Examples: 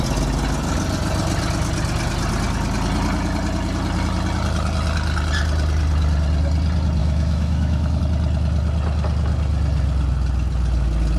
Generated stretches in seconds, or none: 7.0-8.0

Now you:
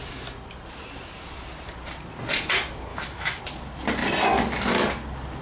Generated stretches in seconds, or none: 2.9-3.4

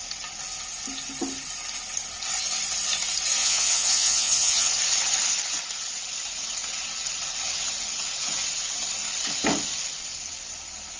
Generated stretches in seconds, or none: 3.4-4.7

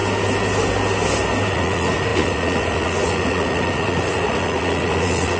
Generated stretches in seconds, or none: 1.5-5.4

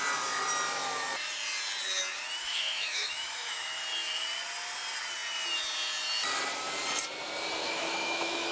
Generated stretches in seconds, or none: 2.4-3.8; 7.6-8.5